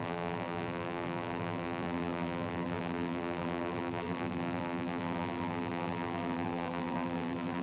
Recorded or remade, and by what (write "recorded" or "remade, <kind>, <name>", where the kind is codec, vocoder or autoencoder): remade, vocoder, BigVGAN v2